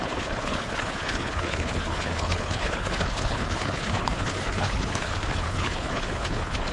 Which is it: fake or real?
fake